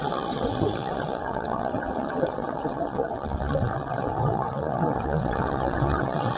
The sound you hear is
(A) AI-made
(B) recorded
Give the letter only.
A